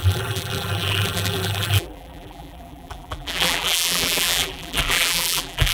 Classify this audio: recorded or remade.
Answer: remade